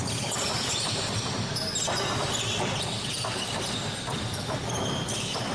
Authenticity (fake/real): real